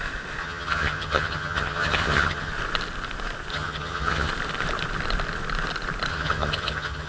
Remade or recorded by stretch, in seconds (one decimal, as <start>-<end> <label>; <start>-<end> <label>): 0.0-0.4 recorded; 0.4-2.5 remade; 2.5-3.5 recorded; 3.5-4.3 remade; 4.3-6.1 recorded; 6.1-7.1 remade